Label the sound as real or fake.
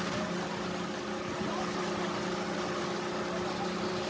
real